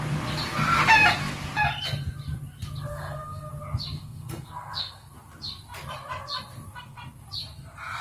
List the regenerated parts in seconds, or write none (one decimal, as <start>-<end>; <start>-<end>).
2.9-3.5; 4.0-5.1